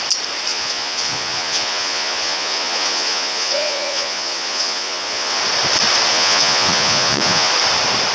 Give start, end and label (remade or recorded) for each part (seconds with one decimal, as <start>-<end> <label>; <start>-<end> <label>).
0.0-0.5 recorded; 0.5-5.4 remade; 5.4-6.1 recorded; 6.1-7.5 remade; 7.5-8.1 recorded

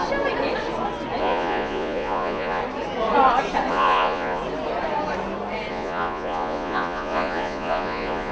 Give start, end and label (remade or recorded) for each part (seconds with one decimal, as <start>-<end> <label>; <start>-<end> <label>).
0.0-1.2 recorded; 1.2-2.6 remade; 2.6-3.7 recorded; 3.7-4.4 remade; 4.4-5.7 recorded; 5.7-8.3 remade

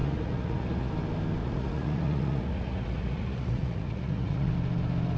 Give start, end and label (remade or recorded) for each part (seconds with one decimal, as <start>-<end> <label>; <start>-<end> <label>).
0.0-0.9 remade; 0.9-1.4 recorded; 1.4-4.5 remade; 4.5-5.2 recorded

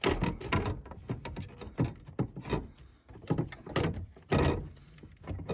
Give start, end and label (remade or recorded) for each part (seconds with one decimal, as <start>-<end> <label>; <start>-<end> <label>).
0.0-5.5 recorded

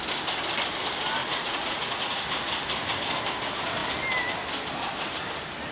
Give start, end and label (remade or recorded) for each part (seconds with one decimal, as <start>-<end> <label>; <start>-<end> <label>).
0.0-1.2 recorded; 1.2-2.2 remade; 2.2-5.7 recorded

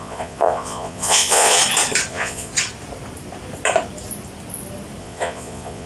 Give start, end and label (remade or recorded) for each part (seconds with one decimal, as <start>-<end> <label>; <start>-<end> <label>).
0.0-1.6 remade; 1.6-2.1 recorded; 2.1-2.5 remade; 2.5-5.0 recorded; 5.0-5.9 remade

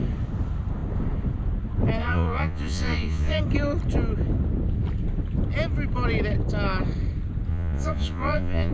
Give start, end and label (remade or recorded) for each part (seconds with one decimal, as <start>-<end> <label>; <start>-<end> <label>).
0.0-2.0 recorded; 2.0-3.4 remade; 3.4-7.5 recorded; 7.5-8.7 remade

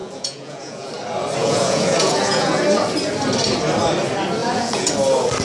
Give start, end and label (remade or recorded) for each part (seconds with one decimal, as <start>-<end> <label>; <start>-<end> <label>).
0.0-0.9 remade; 0.9-1.4 recorded; 1.4-2.6 remade; 2.6-4.4 recorded; 4.4-4.9 remade; 4.9-5.4 recorded